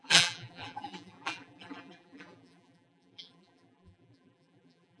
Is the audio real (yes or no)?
no